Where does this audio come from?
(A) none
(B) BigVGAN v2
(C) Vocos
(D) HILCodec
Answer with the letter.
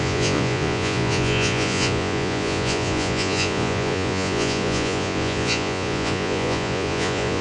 C